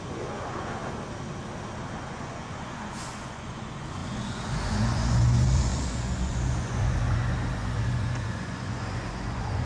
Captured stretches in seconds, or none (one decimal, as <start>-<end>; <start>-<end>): 0.8-1.9